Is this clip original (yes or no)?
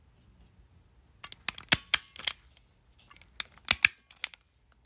yes